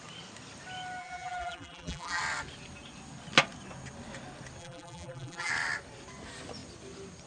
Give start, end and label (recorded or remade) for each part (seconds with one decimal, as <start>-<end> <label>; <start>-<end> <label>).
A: 0.0-1.0 recorded; 1.0-2.2 remade; 2.2-4.6 recorded; 4.6-5.5 remade; 5.5-7.3 recorded